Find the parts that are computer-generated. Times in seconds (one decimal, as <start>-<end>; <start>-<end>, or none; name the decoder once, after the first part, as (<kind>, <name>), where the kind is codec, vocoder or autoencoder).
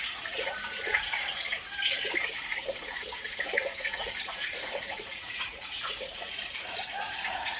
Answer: 0.0-7.6 (vocoder, Vocos)